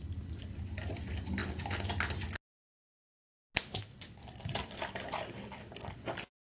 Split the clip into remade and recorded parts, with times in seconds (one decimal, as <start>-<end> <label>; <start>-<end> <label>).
0.0-6.5 recorded